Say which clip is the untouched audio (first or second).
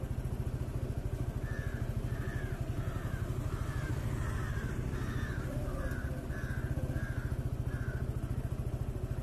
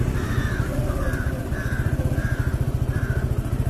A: first